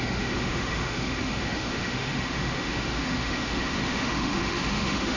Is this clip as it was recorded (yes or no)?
no